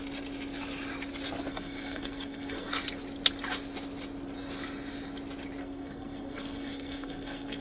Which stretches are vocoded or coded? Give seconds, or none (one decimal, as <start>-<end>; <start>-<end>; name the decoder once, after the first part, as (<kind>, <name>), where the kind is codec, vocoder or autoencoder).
1.5-2.7 (codec, SNAC); 5.6-7.6